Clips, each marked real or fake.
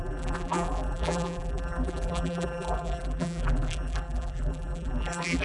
fake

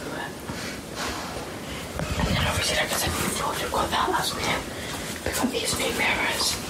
real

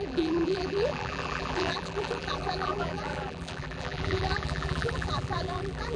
fake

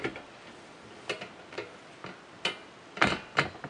real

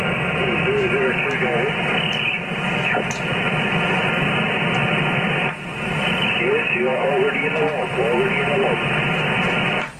fake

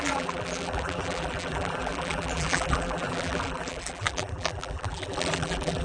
fake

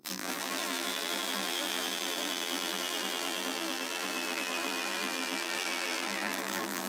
fake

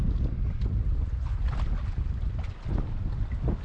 real